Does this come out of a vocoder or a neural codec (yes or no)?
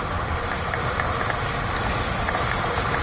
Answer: no